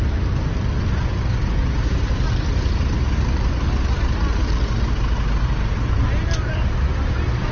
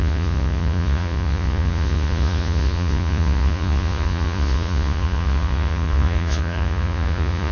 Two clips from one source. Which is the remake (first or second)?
second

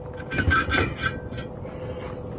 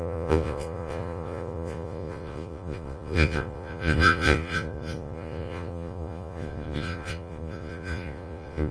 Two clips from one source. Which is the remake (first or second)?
second